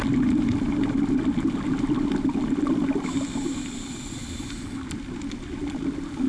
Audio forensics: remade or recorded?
recorded